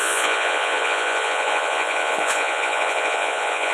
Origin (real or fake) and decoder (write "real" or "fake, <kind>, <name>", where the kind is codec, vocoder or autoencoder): fake, vocoder, Vocos